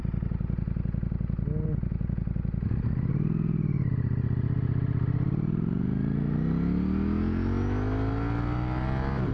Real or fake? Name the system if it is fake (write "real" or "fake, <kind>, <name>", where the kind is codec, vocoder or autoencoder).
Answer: real